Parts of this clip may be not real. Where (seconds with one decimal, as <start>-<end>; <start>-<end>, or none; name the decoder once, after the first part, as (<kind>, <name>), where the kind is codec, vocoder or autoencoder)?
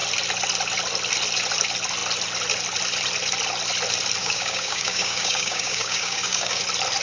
4.2-6.6 (codec, DAC)